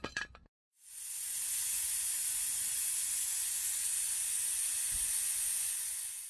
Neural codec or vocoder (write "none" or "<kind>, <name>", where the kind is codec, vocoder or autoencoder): vocoder, Vocos